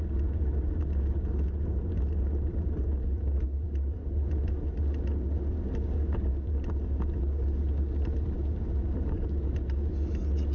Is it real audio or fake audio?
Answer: real